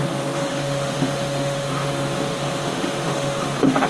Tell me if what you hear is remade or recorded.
remade